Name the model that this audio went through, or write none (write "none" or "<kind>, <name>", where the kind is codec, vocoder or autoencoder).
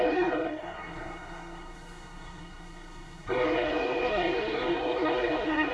codec, SNAC